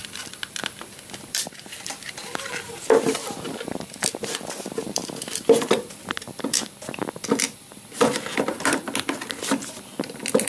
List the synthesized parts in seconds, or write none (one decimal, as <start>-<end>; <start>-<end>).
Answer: 0.0-10.5